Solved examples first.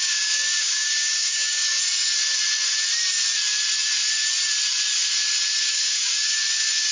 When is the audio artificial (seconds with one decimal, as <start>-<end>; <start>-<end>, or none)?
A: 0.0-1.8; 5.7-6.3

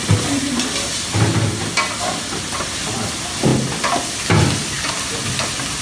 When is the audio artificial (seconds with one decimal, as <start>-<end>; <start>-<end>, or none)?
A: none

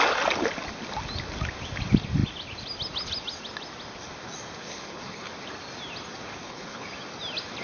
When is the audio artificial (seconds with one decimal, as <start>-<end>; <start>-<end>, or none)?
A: 4.6-5.3; 6.4-6.9

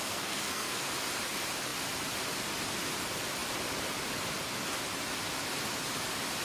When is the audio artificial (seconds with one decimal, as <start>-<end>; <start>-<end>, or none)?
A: 0.0-0.9

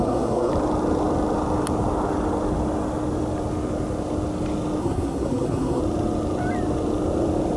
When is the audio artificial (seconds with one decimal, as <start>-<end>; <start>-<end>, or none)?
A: 0.0-0.5; 4.8-5.8

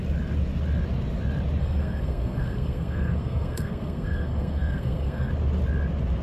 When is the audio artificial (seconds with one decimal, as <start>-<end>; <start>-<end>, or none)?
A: 1.6-5.3